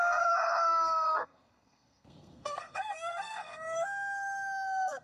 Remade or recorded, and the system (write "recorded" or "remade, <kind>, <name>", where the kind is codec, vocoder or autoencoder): remade, codec, SNAC